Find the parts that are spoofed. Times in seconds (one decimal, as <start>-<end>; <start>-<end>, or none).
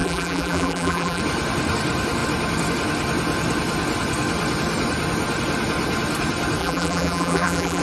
0.0-1.2; 6.6-7.8